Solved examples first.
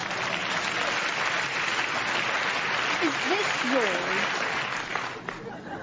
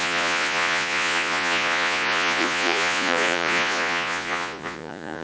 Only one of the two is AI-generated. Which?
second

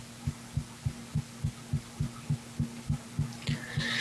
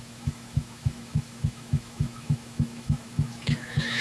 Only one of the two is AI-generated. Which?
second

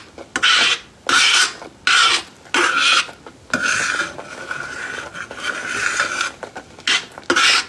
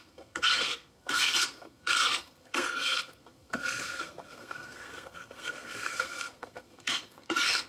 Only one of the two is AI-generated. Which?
second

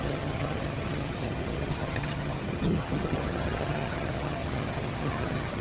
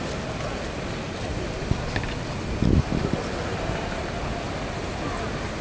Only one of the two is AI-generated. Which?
first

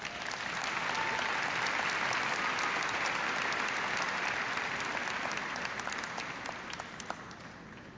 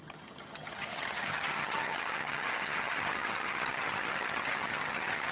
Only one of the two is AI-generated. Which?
second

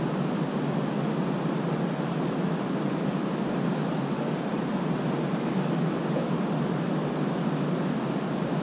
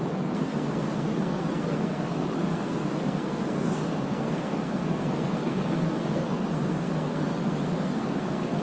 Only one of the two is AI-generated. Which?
second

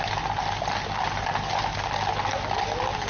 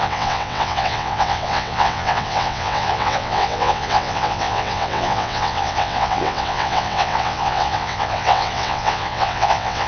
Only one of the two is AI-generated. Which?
second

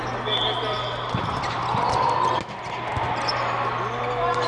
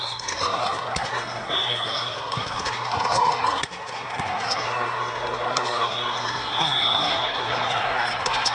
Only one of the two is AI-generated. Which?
second